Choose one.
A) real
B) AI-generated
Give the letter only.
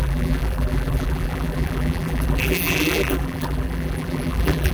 B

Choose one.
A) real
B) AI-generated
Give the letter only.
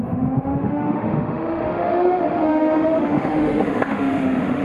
B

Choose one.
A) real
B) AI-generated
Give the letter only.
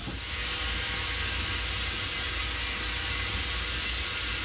A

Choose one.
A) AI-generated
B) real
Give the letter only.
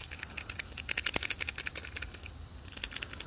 B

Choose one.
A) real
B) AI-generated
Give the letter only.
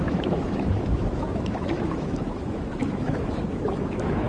B